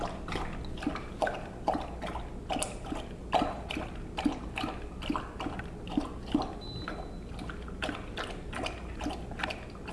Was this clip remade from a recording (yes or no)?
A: no